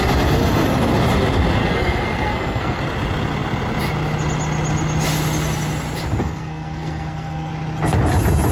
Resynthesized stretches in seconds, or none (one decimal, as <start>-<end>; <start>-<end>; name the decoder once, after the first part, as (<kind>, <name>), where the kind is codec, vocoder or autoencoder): 1.6-2.8 (codec, SNAC); 6.2-7.5